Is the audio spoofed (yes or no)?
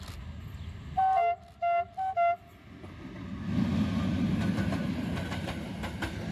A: no